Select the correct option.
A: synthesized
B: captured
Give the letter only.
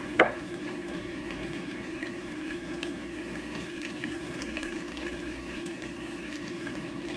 A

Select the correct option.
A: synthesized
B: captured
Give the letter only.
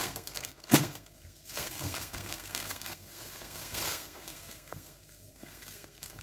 A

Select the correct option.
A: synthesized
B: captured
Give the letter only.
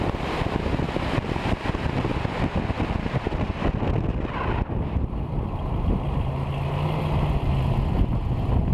B